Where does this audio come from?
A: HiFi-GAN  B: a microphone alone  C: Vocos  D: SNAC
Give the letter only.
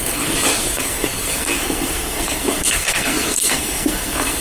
D